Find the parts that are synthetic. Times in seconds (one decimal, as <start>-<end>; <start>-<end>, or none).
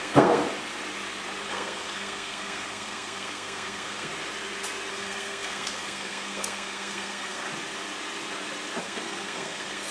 0.0-0.4; 1.5-4.1; 4.9-7.4; 8.8-9.9